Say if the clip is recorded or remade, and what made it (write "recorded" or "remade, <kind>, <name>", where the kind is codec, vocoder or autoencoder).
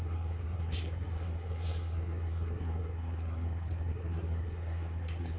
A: remade, codec, SNAC